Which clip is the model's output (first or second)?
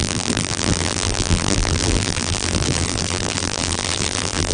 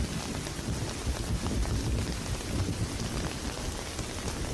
first